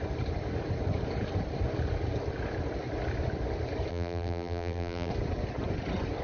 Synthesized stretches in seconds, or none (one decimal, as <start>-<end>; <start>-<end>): 3.9-5.1